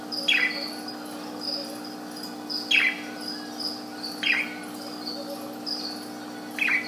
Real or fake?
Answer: real